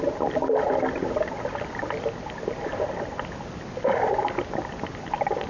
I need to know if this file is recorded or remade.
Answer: recorded